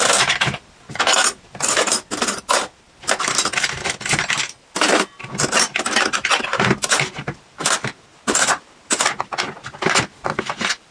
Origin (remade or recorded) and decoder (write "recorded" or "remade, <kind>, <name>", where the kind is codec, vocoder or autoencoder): recorded